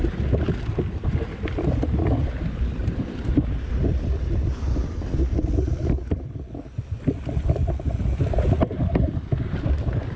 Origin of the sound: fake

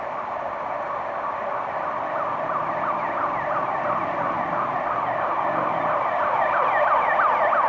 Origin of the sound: fake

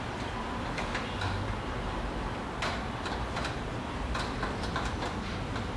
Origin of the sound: fake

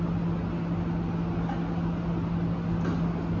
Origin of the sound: real